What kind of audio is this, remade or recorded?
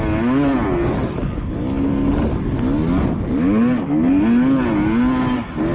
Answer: recorded